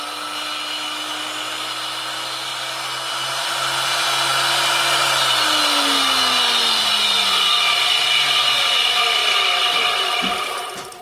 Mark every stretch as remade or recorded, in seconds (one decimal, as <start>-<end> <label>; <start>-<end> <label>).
0.0-11.0 recorded